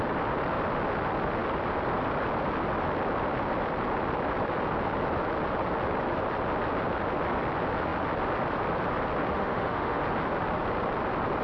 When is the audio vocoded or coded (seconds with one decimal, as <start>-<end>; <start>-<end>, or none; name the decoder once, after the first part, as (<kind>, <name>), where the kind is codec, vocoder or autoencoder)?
9.3-10.0 (autoencoder, DAC-VAE)